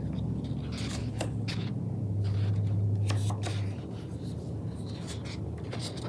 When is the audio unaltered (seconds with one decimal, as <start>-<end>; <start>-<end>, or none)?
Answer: 0.0-1.0; 1.7-6.1